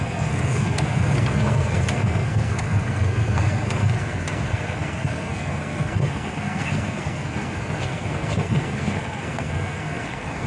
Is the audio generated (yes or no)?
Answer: yes